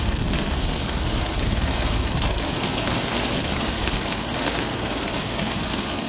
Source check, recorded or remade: remade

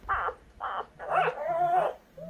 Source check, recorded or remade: recorded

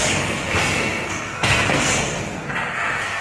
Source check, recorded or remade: remade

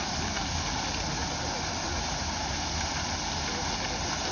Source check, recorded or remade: recorded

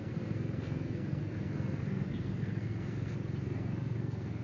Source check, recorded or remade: remade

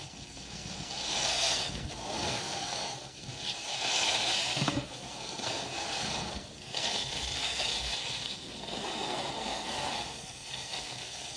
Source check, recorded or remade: remade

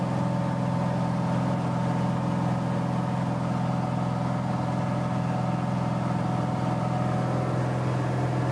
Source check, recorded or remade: recorded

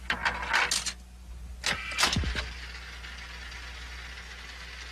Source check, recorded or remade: recorded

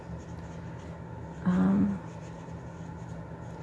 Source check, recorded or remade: recorded